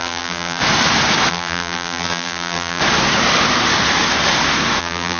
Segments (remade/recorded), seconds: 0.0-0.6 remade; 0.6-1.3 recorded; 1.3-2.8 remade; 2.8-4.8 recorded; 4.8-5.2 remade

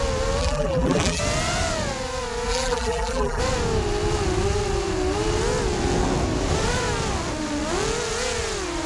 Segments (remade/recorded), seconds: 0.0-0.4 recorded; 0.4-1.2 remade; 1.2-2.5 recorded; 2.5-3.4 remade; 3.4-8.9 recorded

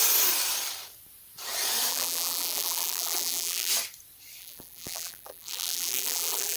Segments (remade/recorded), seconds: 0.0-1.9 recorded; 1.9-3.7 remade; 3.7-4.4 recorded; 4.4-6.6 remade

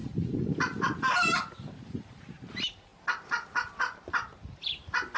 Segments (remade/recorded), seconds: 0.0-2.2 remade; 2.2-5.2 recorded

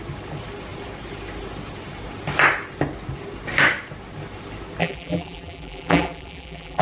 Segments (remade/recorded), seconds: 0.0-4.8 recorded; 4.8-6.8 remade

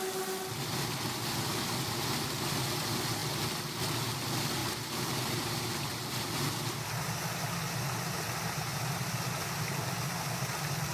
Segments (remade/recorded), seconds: 0.0-4.6 recorded; 4.6-6.3 remade; 6.3-10.9 recorded